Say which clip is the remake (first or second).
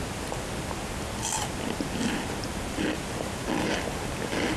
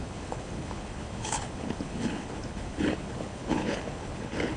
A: second